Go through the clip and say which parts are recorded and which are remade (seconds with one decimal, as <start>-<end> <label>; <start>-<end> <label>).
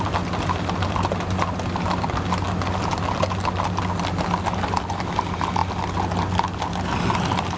0.0-7.6 recorded